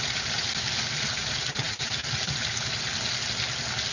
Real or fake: real